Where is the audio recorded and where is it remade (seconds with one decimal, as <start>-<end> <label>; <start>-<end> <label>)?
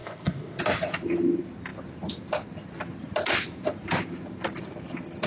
0.0-0.6 remade; 0.6-5.3 recorded